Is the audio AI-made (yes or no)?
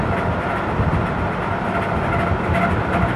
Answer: no